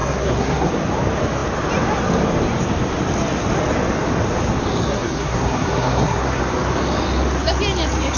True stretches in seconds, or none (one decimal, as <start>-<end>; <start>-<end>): 0.7-4.9; 6.4-8.2